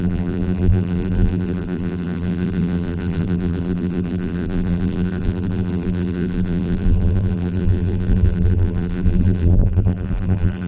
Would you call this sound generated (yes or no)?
yes